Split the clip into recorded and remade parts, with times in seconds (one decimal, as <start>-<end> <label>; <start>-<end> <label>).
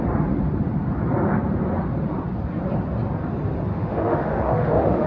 0.0-3.7 recorded; 3.7-5.1 remade